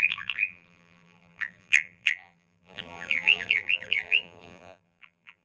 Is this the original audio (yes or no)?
no